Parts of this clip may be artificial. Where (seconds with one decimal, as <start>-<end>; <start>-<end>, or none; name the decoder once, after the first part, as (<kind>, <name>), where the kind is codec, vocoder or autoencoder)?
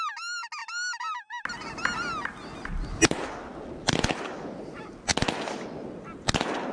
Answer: none